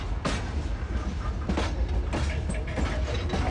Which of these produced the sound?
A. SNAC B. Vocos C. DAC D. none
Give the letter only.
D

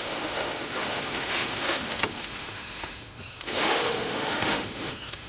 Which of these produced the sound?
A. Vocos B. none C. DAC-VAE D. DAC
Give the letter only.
C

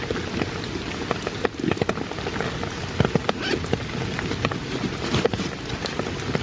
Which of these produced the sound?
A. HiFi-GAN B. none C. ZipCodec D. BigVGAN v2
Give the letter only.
B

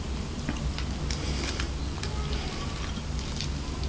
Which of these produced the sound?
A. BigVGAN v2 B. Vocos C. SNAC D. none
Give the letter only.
D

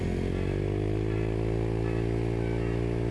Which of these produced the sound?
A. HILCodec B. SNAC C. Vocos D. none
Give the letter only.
D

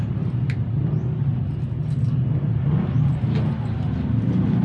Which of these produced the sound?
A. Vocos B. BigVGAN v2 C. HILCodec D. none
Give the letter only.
D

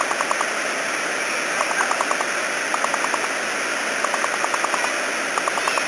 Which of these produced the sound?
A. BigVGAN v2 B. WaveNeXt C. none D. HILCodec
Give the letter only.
C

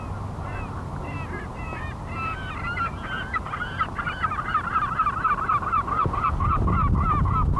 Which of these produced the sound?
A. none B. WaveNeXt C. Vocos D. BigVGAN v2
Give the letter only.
A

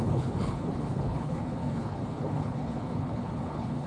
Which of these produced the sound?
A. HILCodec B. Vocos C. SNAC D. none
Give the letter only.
A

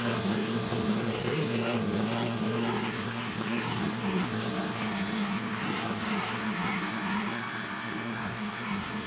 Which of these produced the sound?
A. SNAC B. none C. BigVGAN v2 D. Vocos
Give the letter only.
A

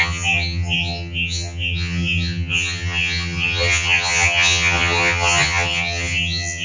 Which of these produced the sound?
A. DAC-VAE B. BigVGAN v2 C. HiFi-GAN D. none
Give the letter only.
C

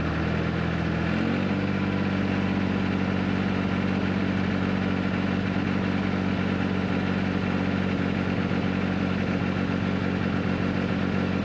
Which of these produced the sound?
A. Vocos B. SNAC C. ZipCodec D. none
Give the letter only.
D